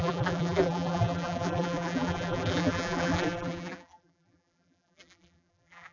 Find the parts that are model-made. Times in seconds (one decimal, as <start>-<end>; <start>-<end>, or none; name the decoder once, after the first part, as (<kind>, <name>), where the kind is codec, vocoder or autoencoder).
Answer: 0.0-5.9 (vocoder, BigVGAN v2)